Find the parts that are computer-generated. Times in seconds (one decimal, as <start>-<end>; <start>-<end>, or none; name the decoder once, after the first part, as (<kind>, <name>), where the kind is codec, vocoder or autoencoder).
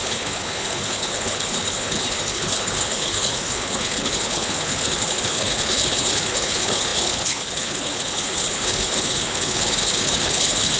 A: 0.0-10.8 (codec, HILCodec)